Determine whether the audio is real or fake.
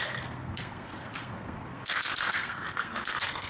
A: fake